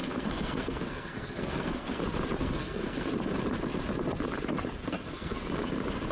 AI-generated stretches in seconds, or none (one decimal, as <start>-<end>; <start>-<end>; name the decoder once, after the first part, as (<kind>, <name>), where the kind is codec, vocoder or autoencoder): 0.0-2.0 (codec, SNAC); 2.4-3.1; 4.8-5.4